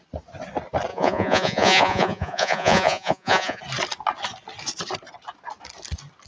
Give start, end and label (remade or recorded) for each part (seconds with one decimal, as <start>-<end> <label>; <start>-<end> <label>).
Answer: 0.0-0.9 recorded; 0.9-3.6 remade; 3.6-6.3 recorded